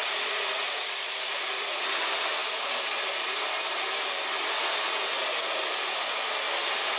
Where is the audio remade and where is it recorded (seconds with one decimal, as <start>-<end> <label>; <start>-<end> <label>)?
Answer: 0.0-1.8 remade; 1.8-5.2 recorded; 5.2-5.9 remade; 5.9-7.0 recorded